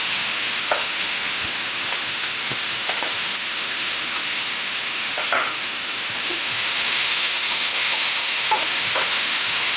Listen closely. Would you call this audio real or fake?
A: fake